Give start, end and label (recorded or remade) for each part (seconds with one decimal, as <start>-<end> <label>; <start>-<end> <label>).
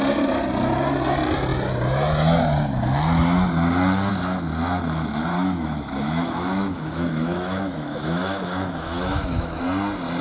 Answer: 0.0-5.3 recorded; 5.3-9.6 remade; 9.6-10.2 recorded